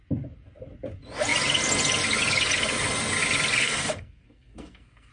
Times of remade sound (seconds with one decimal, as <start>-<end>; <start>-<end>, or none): 3.6-5.1